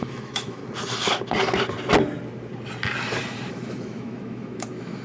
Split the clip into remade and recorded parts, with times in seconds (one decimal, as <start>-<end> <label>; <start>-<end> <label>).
0.0-0.6 remade; 0.6-3.5 recorded; 3.5-5.0 remade